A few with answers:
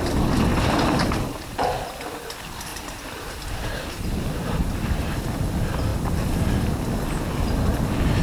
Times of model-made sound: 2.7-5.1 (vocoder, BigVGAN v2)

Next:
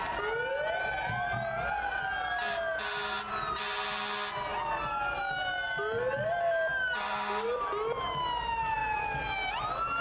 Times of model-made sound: none

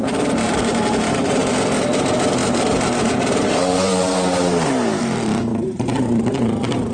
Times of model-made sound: 0.0-1.4 (vocoder, BigVGAN v2); 2.0-6.9

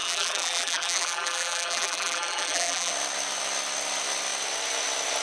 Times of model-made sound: 0.0-2.9 (vocoder, BigVGAN v2)

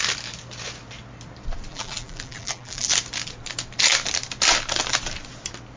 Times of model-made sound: 1.7-2.9 (vocoder, BigVGAN v2)

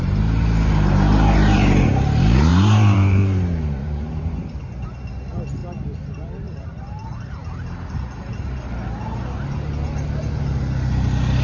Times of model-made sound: 2.5-4.2 (vocoder, BigVGAN v2); 5.6-6.8